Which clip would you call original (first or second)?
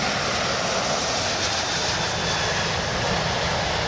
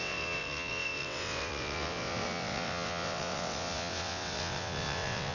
first